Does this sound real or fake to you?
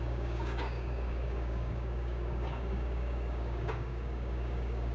fake